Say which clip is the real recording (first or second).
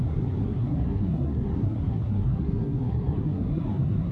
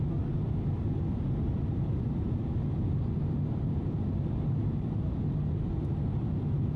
second